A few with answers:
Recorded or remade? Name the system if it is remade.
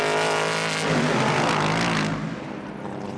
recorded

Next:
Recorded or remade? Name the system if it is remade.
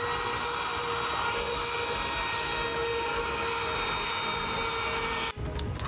recorded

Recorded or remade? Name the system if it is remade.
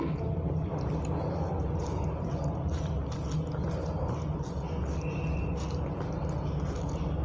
recorded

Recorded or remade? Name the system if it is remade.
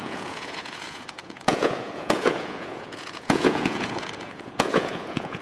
remade, vocoder, Vocos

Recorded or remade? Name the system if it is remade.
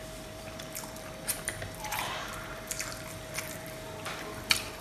remade, vocoder, BigVGAN v2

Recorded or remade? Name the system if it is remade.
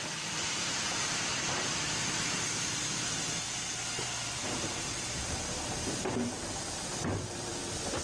remade, vocoder, BigVGAN v2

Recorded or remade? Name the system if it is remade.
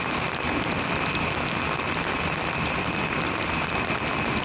recorded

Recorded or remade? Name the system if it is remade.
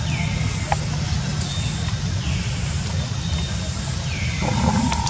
recorded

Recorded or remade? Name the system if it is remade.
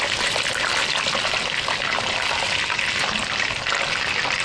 recorded